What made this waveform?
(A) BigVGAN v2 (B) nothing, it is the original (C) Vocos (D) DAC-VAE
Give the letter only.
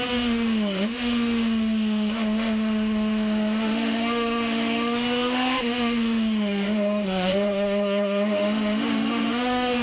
D